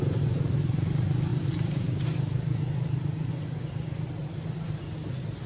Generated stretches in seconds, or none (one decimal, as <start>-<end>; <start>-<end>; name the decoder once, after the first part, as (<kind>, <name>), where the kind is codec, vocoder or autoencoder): 1.3-3.3 (vocoder, BigVGAN v2); 4.2-4.9